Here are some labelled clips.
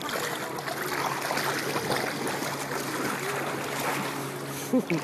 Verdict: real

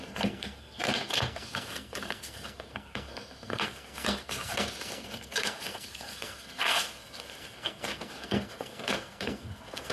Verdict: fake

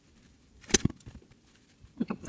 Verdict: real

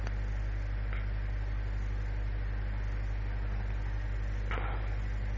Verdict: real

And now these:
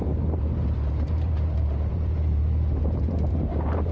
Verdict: fake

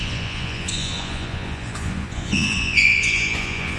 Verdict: fake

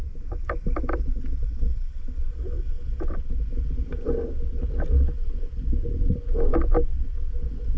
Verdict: real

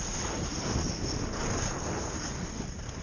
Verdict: real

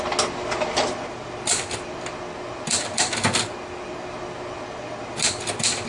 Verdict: real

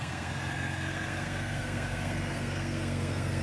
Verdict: fake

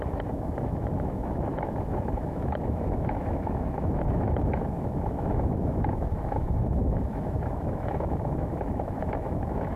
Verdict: fake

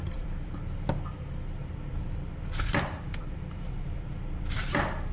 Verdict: fake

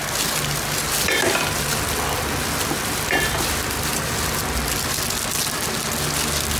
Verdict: real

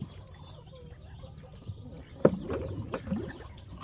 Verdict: fake